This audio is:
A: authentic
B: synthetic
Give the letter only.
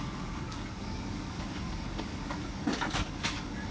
B